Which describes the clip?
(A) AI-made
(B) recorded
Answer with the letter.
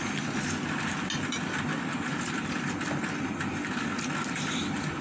B